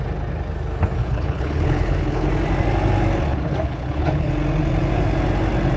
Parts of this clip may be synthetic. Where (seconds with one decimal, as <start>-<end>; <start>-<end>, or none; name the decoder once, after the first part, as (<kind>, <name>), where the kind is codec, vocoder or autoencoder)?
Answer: 1.0-2.3 (codec, HILCodec); 3.3-4.3